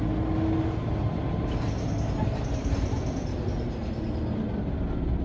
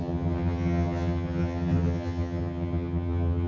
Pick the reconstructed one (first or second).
second